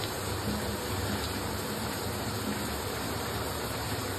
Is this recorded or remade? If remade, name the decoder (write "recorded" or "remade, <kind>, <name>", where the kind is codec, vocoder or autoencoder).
remade, vocoder, BigVGAN v2